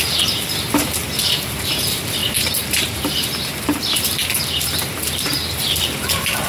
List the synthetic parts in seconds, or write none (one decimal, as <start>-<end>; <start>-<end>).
0.0-6.5